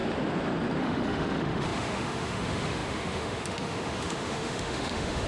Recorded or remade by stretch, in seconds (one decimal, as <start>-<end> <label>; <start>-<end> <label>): 0.0-0.8 recorded; 0.8-5.3 remade